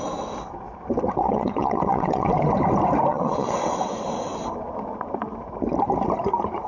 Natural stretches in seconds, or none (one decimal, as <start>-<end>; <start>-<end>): 0.0-1.2; 2.3-3.1; 4.0-6.7